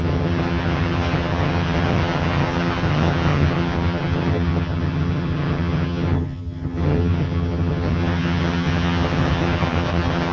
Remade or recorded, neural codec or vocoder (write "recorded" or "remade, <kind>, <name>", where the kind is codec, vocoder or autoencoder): remade, vocoder, HiFi-GAN